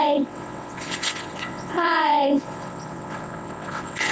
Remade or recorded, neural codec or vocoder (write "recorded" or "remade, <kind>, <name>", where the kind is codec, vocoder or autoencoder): remade, vocoder, WaveNeXt